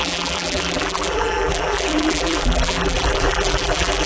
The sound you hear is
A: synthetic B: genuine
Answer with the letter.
A